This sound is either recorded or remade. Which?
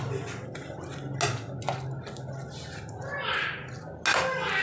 recorded